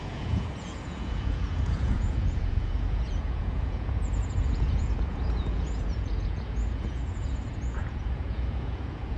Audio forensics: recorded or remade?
remade